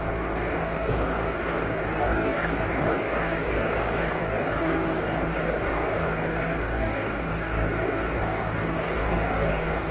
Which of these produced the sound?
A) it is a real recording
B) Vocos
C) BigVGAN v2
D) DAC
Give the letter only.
D